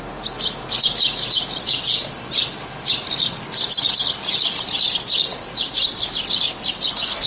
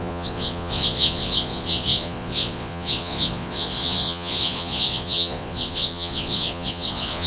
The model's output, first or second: second